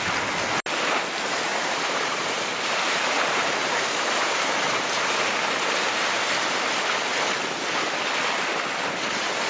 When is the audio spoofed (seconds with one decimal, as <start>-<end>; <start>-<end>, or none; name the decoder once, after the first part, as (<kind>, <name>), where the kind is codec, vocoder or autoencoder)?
1.5-6.7 (vocoder, BigVGAN v2)